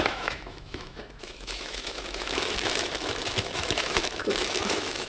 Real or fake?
fake